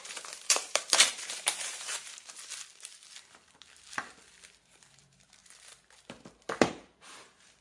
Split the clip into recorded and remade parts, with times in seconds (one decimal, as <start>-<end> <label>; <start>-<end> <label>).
0.0-2.4 remade; 2.4-4.6 recorded; 4.6-5.4 remade; 5.4-6.7 recorded; 6.7-7.6 remade